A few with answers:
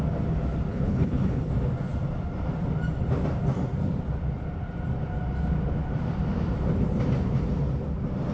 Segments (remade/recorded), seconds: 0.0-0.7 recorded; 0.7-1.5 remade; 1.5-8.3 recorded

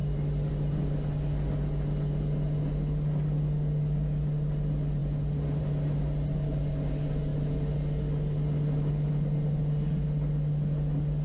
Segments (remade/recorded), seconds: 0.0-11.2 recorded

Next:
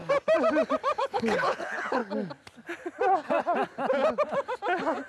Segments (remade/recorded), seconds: 0.0-1.0 recorded; 1.0-2.0 remade; 2.0-5.1 recorded